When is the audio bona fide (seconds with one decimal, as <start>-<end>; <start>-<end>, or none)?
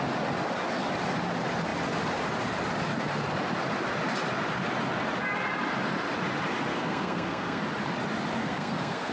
0.0-6.7; 7.6-8.4